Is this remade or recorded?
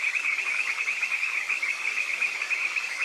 remade